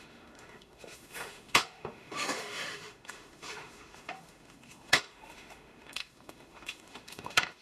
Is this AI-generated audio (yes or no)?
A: yes